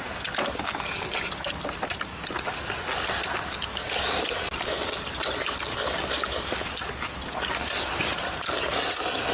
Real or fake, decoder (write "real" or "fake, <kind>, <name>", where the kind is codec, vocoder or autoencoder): real